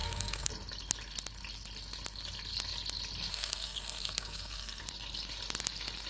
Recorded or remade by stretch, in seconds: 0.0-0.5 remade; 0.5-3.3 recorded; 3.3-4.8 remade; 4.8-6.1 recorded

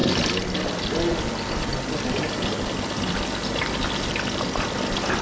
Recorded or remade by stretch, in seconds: 0.0-5.2 recorded

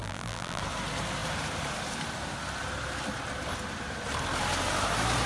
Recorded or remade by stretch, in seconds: 0.0-0.6 remade; 0.6-5.3 recorded

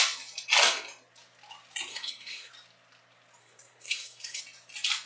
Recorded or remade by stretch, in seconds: 0.0-1.9 recorded; 1.9-2.5 remade; 2.5-3.4 recorded; 3.4-4.4 remade; 4.4-5.1 recorded

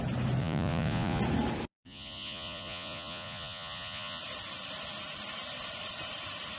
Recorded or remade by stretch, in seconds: 0.0-0.4 recorded; 0.4-1.2 remade; 1.2-1.7 recorded; 1.7-4.2 remade; 4.2-6.6 recorded

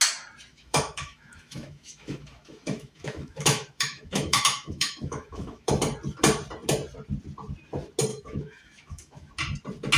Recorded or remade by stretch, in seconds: 0.0-0.5 recorded; 0.5-5.7 remade; 5.7-8.1 recorded; 8.1-9.3 remade; 9.3-10.0 recorded

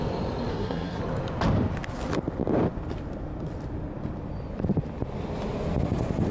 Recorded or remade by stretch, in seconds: 0.0-0.5 recorded; 0.5-1.0 remade; 1.0-6.3 recorded

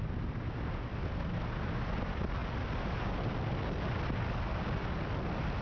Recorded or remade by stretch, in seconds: 0.0-5.6 recorded